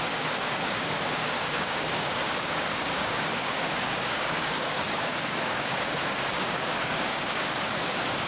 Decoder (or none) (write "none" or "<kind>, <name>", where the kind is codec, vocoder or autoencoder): codec, DAC